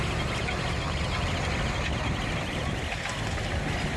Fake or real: real